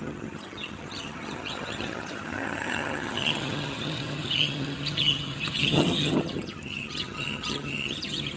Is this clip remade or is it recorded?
remade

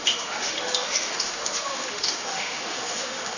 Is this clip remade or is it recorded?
remade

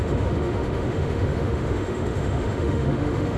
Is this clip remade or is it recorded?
remade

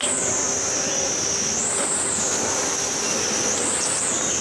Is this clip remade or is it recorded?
recorded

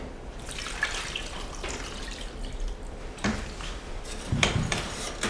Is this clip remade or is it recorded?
remade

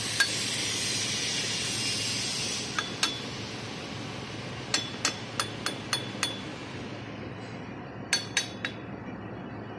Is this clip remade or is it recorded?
recorded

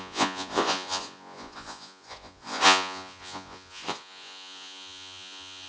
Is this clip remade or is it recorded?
remade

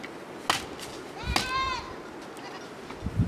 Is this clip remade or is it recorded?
recorded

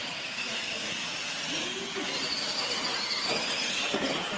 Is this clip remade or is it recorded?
recorded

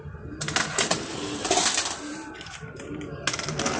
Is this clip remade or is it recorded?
recorded